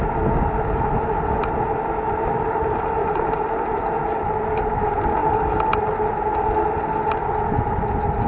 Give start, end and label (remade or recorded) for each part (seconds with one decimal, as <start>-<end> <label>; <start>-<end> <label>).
0.0-3.0 recorded; 3.0-3.8 remade; 3.8-8.3 recorded